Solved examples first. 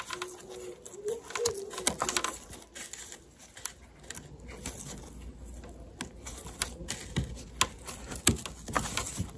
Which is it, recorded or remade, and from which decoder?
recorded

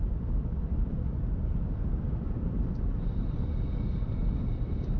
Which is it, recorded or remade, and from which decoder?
remade, vocoder, BigVGAN v2